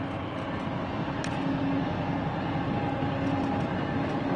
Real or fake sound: real